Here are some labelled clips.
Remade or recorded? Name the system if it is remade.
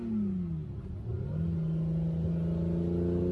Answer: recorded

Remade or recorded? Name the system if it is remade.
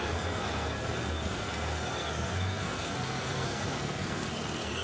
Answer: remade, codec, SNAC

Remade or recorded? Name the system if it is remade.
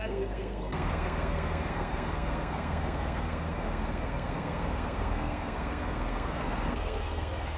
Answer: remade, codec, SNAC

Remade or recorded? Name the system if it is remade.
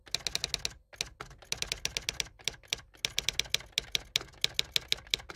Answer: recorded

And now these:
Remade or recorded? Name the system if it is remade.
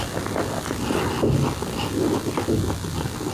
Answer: recorded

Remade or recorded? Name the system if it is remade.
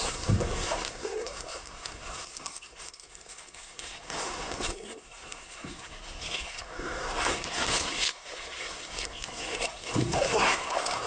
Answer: remade, codec, SNAC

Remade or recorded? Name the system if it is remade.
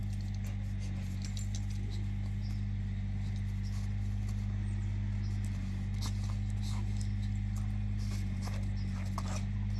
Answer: recorded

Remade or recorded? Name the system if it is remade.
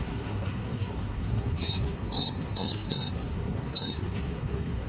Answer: remade, codec, SNAC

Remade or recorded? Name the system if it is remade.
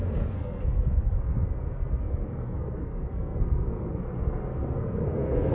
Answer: remade, codec, SNAC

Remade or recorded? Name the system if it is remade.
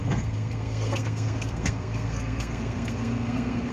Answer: remade, codec, SNAC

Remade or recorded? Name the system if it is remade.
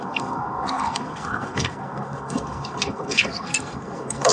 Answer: remade, codec, SNAC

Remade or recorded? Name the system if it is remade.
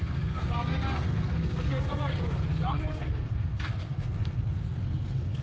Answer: remade, codec, SNAC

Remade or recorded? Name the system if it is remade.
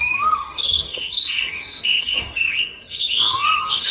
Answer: remade, codec, SNAC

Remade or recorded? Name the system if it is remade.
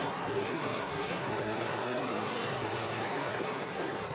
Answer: remade, codec, SNAC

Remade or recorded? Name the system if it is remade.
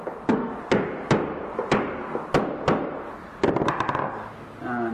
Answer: recorded